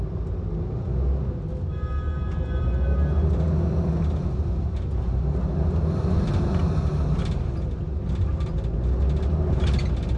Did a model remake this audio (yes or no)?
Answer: no